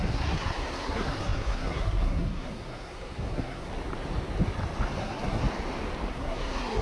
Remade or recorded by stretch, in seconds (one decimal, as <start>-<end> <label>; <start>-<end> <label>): 0.0-3.7 remade; 3.7-5.0 recorded; 5.0-5.4 remade; 5.4-6.1 recorded; 6.1-6.8 remade